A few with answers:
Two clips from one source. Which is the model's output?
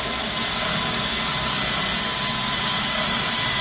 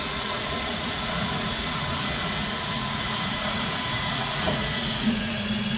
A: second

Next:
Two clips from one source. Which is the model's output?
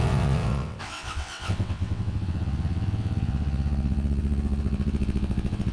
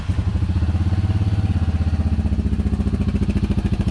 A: first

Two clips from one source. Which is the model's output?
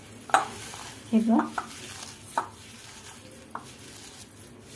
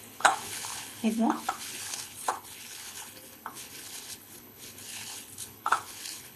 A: second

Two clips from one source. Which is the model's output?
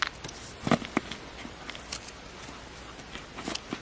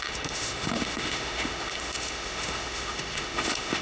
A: second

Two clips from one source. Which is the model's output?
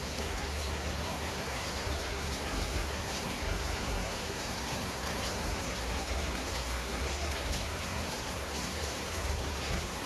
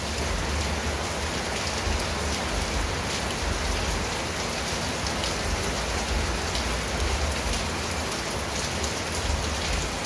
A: first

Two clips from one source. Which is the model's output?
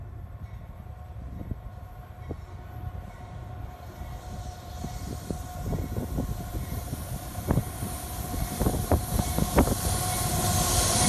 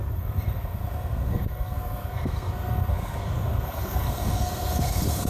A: second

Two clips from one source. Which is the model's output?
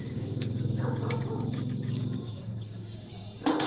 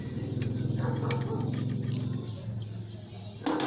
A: first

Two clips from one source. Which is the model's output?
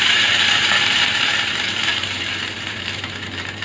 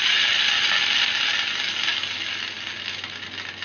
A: first